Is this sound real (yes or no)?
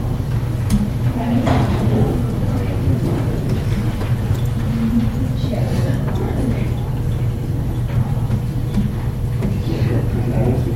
yes